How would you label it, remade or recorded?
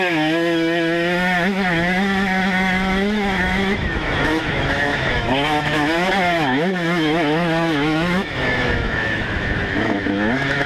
remade